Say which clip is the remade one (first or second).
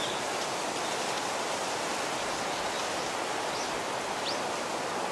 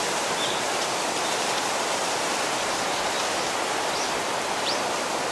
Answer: second